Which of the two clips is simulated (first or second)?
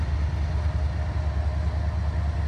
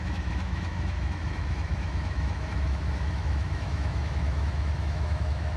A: second